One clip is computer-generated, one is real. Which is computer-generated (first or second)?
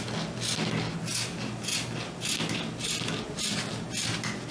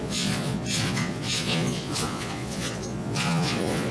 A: second